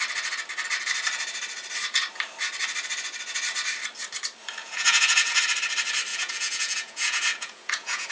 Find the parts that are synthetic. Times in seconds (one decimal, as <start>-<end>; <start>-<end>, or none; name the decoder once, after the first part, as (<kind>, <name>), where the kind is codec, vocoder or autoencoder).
4.6-5.4 (vocoder, Vocos); 6.1-8.1